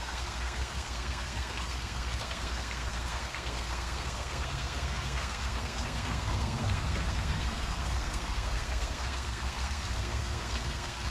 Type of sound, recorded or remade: remade